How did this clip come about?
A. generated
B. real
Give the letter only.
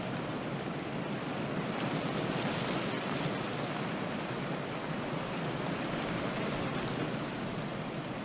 B